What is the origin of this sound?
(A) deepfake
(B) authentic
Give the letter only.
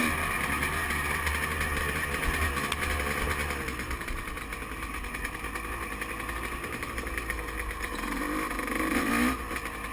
B